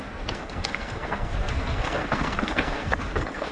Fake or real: fake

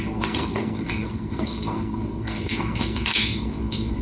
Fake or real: fake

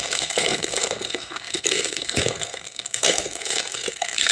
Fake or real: fake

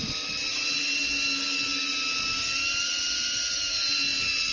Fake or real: real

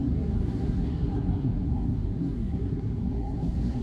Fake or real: fake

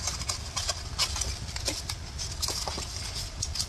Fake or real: real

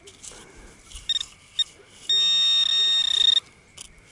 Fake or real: real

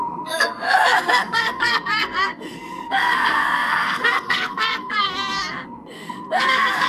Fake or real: fake